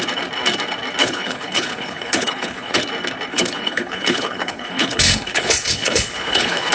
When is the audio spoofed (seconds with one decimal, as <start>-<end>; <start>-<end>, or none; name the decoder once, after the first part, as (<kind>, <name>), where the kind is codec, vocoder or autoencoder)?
1.0-2.8 (codec, HILCodec); 3.3-6.7

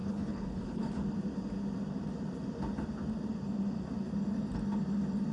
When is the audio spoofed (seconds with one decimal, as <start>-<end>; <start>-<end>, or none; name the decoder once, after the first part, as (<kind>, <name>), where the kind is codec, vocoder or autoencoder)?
0.0-0.9 (codec, HILCodec)